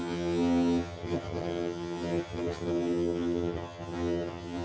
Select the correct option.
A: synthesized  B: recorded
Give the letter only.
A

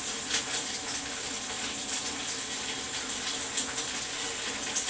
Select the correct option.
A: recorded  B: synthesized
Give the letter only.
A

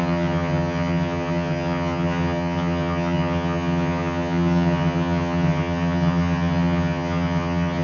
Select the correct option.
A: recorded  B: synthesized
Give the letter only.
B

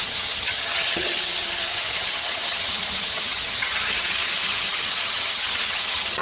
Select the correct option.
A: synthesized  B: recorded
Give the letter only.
A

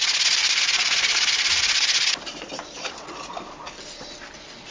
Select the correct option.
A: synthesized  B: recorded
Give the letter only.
B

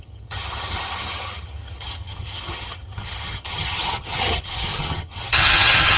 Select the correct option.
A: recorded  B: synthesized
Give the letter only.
B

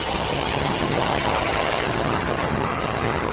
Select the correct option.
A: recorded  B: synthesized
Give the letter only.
B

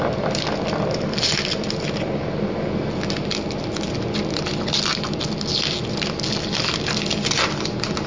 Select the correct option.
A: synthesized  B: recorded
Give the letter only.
B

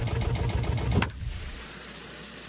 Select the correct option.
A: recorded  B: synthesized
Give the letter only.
A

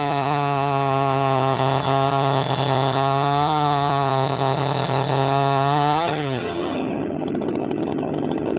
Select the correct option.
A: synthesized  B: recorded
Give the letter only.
A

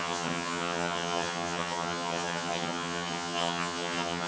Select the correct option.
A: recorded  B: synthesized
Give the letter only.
B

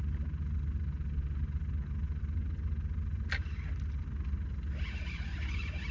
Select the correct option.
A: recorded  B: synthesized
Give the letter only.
A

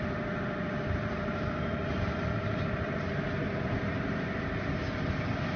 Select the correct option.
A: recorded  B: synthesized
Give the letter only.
A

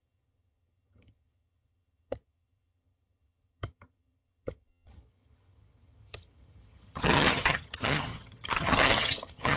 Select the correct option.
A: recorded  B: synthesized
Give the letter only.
B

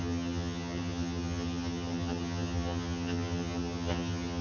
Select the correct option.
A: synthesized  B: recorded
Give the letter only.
A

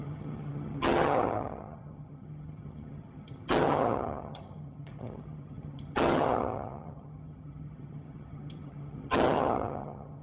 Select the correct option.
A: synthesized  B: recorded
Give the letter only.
A